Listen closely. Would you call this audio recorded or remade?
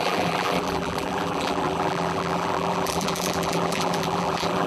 remade